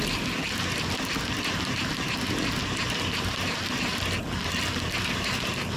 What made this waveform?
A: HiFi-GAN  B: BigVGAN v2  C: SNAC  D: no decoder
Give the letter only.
D